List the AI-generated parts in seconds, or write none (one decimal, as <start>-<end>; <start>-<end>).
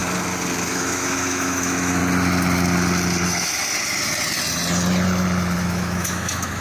0.7-2.0; 5.6-6.6